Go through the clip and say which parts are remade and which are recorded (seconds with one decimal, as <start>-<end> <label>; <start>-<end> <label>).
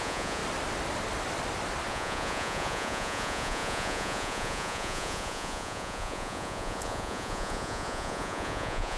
0.0-0.4 remade; 0.4-1.9 recorded; 1.9-9.0 remade